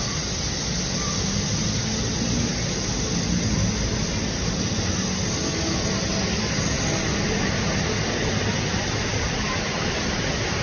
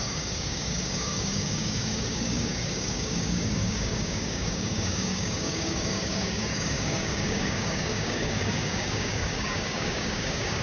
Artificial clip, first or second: second